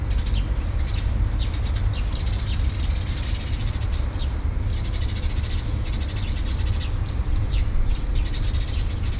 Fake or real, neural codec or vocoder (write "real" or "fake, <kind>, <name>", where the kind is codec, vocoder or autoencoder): real